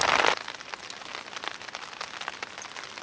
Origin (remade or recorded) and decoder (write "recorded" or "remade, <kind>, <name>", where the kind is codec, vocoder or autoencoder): recorded